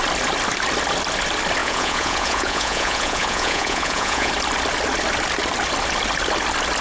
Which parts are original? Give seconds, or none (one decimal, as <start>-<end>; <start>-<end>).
0.0-1.6; 4.3-6.8